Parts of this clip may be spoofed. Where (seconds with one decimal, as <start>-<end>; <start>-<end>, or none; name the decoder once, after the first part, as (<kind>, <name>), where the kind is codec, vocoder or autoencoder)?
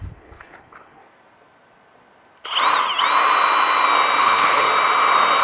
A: 0.0-1.0 (codec, HILCodec); 4.2-4.7